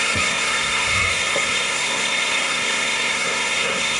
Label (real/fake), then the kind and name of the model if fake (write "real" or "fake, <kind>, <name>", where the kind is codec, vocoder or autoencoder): fake, codec, SNAC